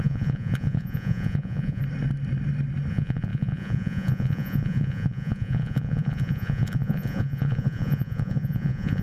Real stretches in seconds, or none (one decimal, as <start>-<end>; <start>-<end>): 1.8-2.9